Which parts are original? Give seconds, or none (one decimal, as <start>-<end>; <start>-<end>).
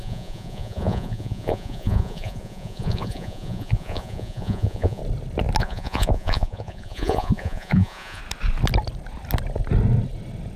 5.0-5.6; 8.2-10.6